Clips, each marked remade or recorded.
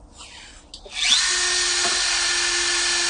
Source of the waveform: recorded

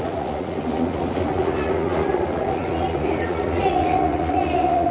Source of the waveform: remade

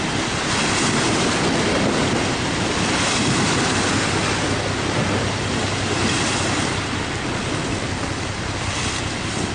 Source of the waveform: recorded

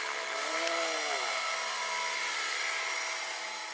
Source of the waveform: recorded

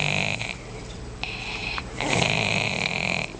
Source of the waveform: remade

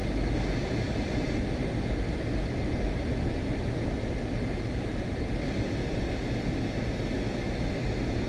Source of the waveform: recorded